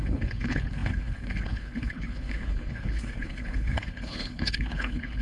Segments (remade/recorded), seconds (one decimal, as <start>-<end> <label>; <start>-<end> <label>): 0.0-5.2 remade